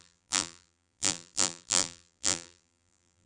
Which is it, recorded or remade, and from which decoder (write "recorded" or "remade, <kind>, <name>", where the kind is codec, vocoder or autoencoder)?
remade, vocoder, BigVGAN v2